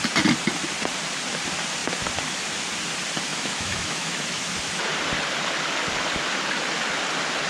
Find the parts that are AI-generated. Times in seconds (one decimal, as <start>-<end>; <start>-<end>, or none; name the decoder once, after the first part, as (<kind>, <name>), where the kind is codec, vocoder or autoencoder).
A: 3.3-4.5 (autoencoder, DAC-VAE)